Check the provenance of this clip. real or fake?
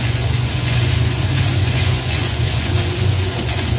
fake